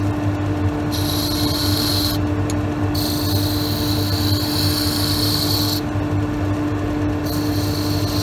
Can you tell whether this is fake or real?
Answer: real